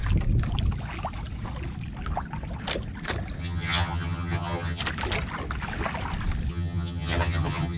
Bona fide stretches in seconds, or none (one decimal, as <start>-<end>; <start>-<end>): 0.0-3.4; 4.8-6.5